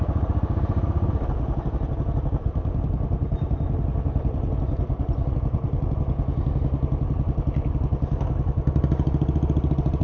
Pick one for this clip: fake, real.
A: real